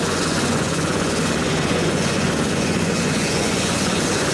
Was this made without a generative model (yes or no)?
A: no